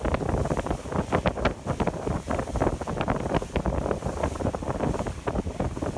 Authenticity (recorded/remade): recorded